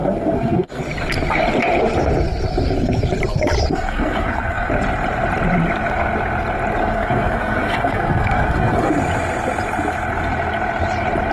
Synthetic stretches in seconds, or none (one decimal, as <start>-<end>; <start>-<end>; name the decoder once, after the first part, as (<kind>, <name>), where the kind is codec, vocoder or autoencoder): 0.0-0.8 (codec, SNAC); 3.7-4.7; 6.8-8.9

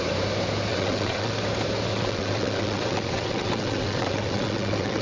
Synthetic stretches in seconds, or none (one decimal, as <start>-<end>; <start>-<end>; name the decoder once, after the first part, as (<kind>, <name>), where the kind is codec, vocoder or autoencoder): 0.7-1.3 (vocoder, WaveNeXt); 1.9-5.0

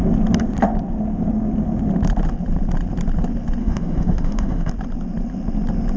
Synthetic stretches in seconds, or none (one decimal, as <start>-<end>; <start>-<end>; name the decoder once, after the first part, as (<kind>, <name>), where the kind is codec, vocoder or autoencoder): 3.6-4.7 (autoencoder, DAC-VAE)